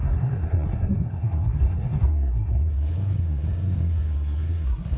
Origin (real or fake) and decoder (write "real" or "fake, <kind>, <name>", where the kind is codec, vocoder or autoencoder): fake, codec, SNAC